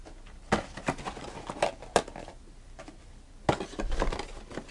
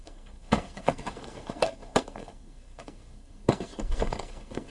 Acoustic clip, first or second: first